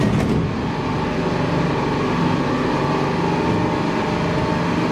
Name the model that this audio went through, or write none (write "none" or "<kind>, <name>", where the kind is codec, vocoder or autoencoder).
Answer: none